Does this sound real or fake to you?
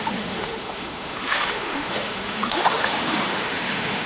fake